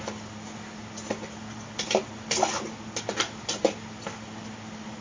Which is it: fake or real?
real